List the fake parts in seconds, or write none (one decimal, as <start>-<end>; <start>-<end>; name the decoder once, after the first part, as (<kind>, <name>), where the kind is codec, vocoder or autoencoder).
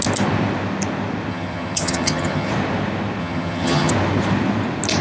1.3-2.5 (vocoder, HiFi-GAN); 3.2-3.9